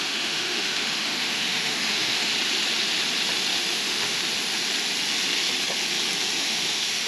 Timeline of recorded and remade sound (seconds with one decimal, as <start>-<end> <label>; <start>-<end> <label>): 0.0-2.3 remade; 2.3-3.7 recorded; 3.7-4.2 remade; 4.2-6.4 recorded; 6.4-7.1 remade